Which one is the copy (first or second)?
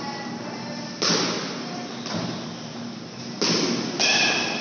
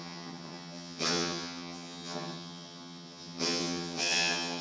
second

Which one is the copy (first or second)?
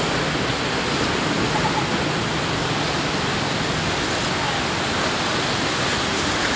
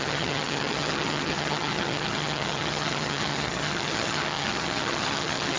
second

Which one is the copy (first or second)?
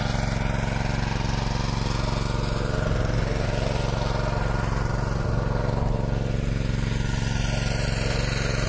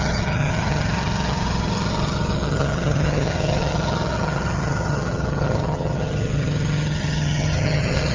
second